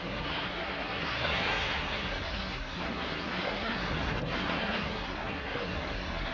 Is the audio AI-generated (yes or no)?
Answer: yes